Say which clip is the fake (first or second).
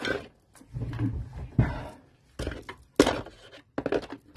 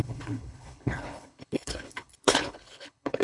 second